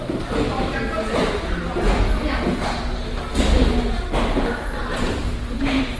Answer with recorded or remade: recorded